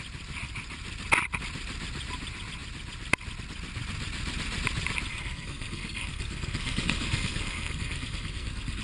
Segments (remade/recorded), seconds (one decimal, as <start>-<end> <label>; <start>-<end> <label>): 0.0-5.1 recorded; 5.1-8.8 remade